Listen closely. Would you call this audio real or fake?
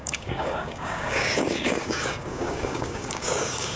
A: fake